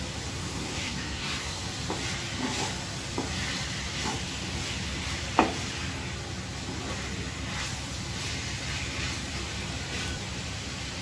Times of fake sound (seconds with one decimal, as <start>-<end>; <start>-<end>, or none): 0.4-1.6